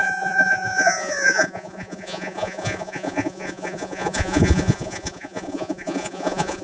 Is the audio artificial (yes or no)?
yes